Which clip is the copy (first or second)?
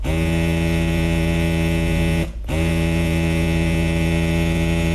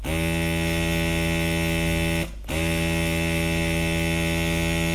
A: first